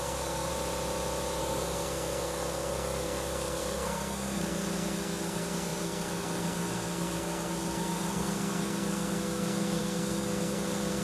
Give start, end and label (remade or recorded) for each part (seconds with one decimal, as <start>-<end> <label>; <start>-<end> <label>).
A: 0.0-0.5 remade; 0.5-1.4 recorded; 1.4-11.0 remade